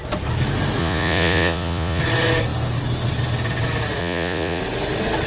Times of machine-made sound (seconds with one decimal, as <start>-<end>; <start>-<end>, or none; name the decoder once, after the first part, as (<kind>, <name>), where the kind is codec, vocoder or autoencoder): 0.8-2.0 (vocoder, Vocos); 4.0-4.6

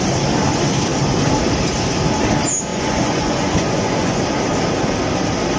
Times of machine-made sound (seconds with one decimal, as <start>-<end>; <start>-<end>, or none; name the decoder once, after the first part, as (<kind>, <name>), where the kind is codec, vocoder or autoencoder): 2.7-4.2 (vocoder, Vocos)

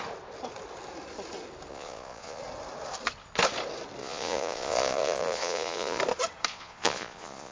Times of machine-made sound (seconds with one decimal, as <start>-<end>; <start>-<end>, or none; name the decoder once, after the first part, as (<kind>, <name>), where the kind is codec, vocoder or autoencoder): 1.7-2.4 (vocoder, Vocos); 4.0-6.0; 6.5-7.5

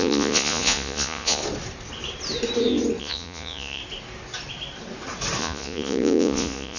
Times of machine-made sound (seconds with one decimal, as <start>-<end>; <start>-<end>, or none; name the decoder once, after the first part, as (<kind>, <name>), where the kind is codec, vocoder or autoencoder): 0.0-1.4 (vocoder, Vocos); 3.0-3.8; 5.4-6.8

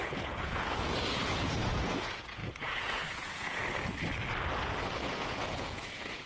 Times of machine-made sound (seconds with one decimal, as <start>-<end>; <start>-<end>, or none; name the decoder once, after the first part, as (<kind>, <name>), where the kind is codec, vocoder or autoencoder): 0.0-3.6 (vocoder, Vocos); 4.6-6.3

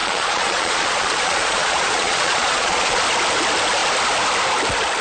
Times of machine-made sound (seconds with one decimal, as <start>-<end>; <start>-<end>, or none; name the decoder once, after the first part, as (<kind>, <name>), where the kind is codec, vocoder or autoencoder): 0.0-3.0 (vocoder, Vocos)